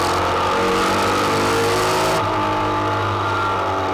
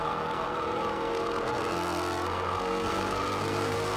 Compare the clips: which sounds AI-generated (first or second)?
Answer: second